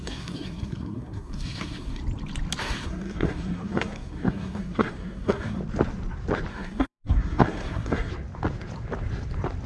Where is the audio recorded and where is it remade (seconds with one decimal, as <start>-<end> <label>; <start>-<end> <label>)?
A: 0.0-2.0 remade; 2.0-2.6 recorded; 2.6-5.6 remade; 5.6-6.5 recorded; 6.5-8.1 remade; 8.1-9.7 recorded